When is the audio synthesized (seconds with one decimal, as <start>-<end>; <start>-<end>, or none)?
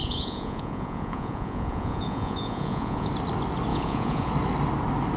0.0-3.1; 3.7-4.3